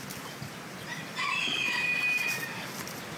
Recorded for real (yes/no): yes